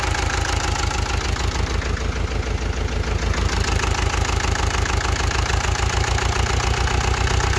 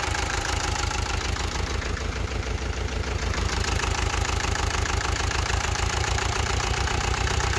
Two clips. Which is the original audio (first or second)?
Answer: first